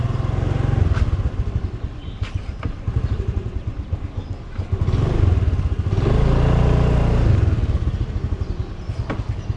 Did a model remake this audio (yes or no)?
no